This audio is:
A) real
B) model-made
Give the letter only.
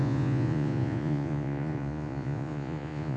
B